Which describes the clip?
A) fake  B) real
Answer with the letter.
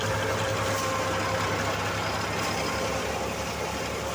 B